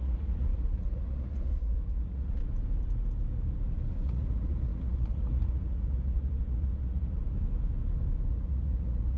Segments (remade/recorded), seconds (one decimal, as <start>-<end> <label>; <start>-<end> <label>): 0.0-2.4 remade; 2.4-3.9 recorded; 3.9-7.2 remade; 7.2-8.3 recorded; 8.3-9.2 remade